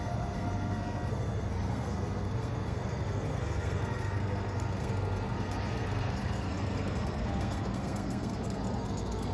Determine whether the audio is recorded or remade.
remade